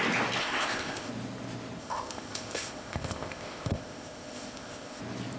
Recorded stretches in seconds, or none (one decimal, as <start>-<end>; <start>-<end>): 0.0-0.4; 1.1-1.8; 5.0-5.4